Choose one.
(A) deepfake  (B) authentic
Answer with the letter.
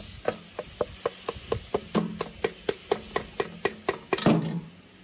B